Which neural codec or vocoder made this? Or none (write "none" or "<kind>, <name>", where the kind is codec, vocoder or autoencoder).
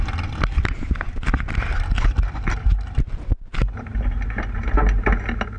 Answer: none